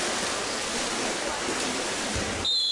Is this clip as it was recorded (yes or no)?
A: yes